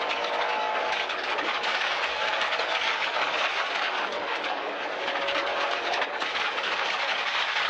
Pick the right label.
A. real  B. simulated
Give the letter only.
B